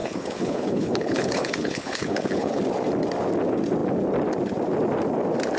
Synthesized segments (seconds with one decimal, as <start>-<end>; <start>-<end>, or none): 0.0-2.6